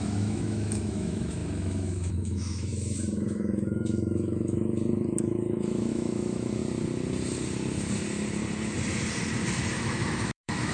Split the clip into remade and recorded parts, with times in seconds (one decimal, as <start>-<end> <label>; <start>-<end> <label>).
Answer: 0.0-6.6 remade; 6.6-9.8 recorded; 9.8-10.7 remade